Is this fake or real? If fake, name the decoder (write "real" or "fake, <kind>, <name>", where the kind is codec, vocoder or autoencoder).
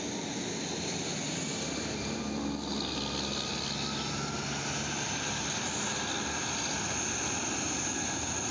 real